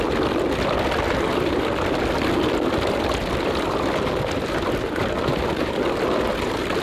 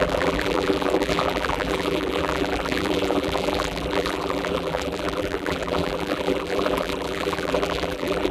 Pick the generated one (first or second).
second